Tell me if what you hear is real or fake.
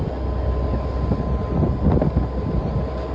real